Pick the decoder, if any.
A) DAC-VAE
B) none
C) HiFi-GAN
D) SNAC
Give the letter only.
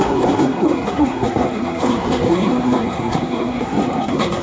D